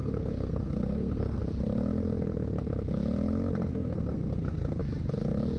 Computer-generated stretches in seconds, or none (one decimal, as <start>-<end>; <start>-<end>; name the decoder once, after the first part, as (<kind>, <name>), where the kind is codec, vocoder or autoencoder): 0.0-1.4 (codec, SNAC); 3.7-4.8